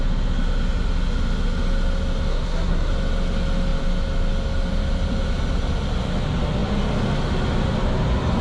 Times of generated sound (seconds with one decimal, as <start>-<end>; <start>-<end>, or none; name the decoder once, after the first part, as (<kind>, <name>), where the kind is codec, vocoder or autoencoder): 2.3-2.9 (codec, SNAC)